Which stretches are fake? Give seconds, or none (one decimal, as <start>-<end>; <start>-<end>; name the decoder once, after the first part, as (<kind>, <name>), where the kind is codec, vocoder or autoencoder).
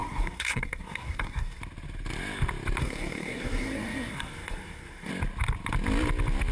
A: 0.0-1.6 (codec, SNAC); 2.8-5.1